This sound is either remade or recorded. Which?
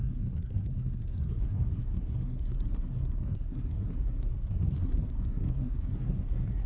remade